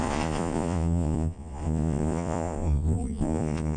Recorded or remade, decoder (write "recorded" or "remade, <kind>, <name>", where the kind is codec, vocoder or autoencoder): remade, vocoder, Vocos